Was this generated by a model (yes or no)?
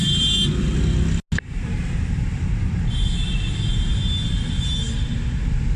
no